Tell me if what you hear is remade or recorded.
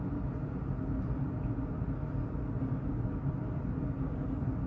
recorded